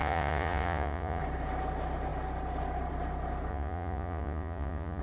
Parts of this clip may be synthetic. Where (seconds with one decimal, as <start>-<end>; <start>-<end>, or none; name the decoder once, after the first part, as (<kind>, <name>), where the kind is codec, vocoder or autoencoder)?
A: 0.0-1.2 (vocoder, Vocos); 3.5-5.0